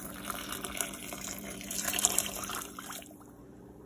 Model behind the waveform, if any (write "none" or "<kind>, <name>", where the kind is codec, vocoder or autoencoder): vocoder, BigVGAN v2